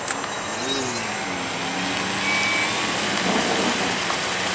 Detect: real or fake real